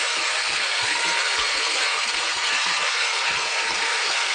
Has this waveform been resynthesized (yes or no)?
yes